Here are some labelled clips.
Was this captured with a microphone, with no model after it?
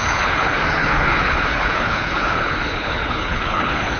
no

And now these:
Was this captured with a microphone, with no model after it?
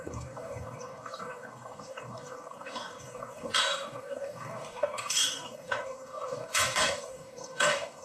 no